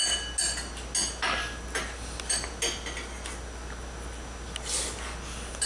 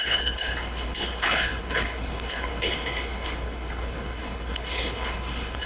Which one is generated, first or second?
second